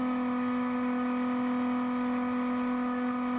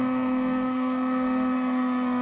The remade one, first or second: second